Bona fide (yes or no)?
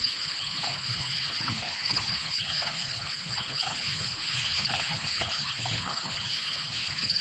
no